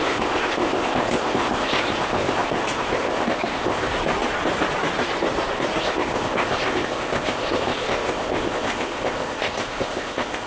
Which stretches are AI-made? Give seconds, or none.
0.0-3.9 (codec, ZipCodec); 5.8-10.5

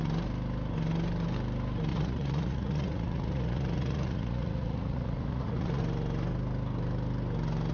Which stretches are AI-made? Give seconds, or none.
1.9-5.8 (vocoder, Vocos)

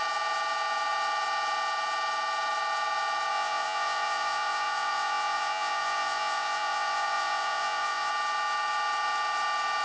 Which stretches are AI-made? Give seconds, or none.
3.3-8.1 (vocoder, Vocos)

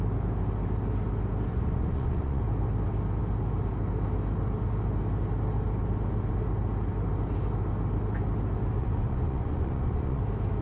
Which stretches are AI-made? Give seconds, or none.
1.5-2.4 (vocoder, Vocos); 8.8-10.2

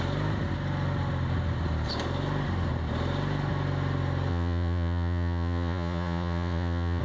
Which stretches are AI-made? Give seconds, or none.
4.3-7.0 (vocoder, Vocos)

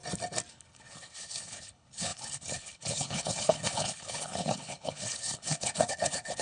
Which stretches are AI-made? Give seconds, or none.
0.5-6.4 (codec, HILCodec)

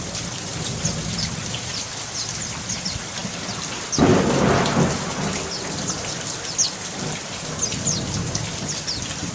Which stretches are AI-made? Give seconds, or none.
none